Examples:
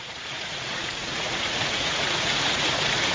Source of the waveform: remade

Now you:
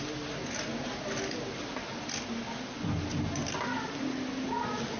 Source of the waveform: recorded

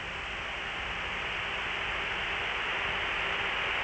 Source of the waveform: recorded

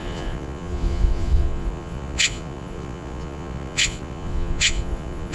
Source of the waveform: remade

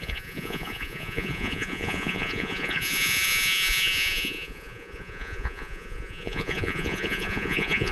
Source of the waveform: remade